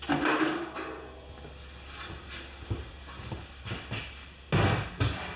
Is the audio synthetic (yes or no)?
no